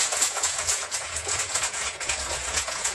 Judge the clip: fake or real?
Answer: fake